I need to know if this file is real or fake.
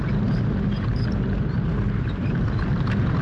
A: fake